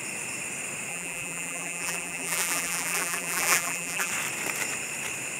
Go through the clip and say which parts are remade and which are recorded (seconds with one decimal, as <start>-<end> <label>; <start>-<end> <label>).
0.0-0.9 recorded; 0.9-4.1 remade; 4.1-5.4 recorded